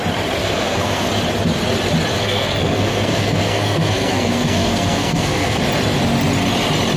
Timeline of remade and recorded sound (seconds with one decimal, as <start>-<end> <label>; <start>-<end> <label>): 0.0-0.4 recorded; 0.4-1.1 remade; 1.1-2.1 recorded; 2.1-5.6 remade; 5.6-7.0 recorded